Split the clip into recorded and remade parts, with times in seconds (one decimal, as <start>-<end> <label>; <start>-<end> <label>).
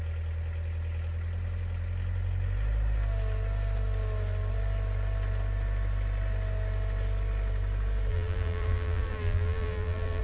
0.0-8.1 recorded; 8.1-10.2 remade